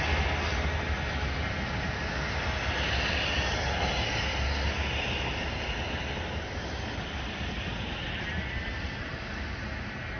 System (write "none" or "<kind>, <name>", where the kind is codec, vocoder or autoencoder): none